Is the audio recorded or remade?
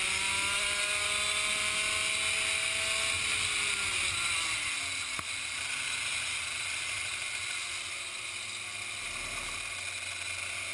recorded